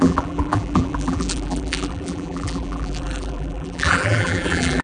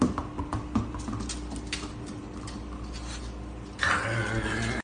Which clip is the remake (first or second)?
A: first